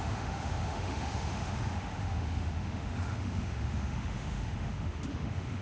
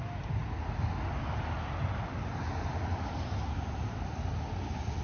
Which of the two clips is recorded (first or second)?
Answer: second